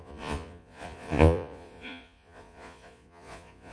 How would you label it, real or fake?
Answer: fake